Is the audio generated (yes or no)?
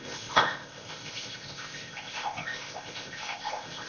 yes